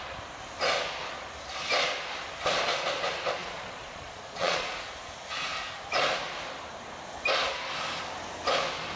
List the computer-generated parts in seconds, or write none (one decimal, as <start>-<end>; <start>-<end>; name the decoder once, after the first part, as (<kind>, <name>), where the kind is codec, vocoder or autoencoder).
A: 3.4-4.7 (vocoder, Vocos)